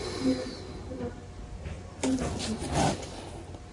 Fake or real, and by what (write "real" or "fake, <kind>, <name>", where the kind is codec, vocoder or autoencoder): real